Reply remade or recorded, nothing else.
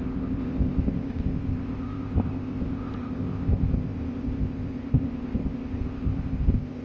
remade